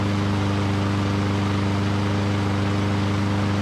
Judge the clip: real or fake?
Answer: real